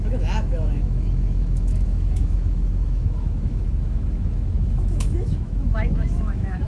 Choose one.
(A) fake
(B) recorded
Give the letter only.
A